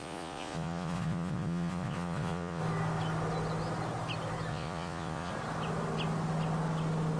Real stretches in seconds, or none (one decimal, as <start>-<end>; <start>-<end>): 2.6-4.5; 5.3-7.2